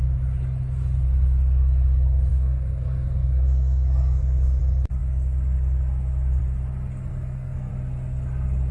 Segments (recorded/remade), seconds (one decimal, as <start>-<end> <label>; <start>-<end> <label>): 0.0-2.3 recorded; 2.3-4.6 remade; 4.6-7.1 recorded; 7.1-7.7 remade; 7.7-8.7 recorded